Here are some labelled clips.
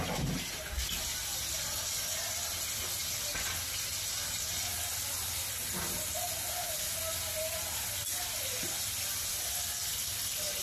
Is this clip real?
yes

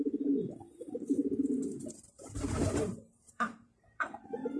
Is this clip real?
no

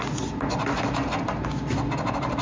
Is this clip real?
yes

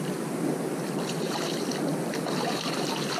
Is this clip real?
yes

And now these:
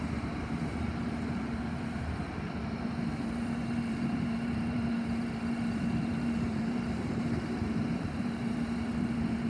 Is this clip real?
no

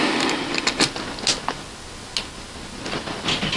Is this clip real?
yes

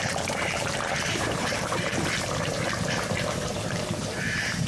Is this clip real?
no